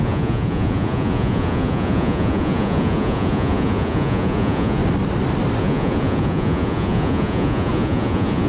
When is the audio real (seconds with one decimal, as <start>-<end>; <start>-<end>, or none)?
4.8-5.6